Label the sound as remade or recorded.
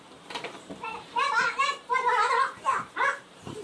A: remade